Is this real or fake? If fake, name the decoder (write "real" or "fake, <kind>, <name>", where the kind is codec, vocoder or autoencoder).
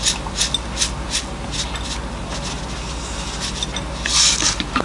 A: real